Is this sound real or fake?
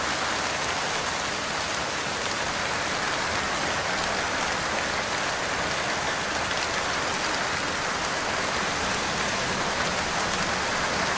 real